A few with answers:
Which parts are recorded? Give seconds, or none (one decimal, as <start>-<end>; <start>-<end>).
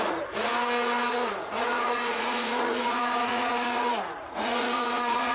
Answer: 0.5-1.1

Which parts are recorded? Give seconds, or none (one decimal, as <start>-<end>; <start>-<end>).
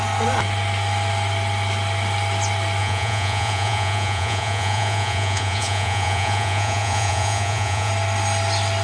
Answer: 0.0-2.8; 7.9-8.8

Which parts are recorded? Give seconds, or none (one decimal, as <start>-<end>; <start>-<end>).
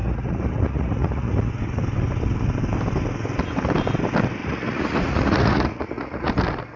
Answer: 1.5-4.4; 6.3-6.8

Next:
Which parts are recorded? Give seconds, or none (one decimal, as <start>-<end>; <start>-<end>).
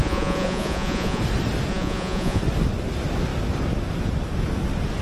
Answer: 1.2-1.7; 2.4-5.0